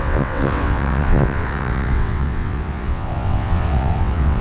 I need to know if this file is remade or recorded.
remade